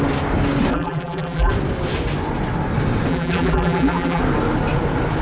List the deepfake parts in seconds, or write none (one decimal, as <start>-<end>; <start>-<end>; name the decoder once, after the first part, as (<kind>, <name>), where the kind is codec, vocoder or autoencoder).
0.7-1.5 (vocoder, BigVGAN v2); 3.1-4.2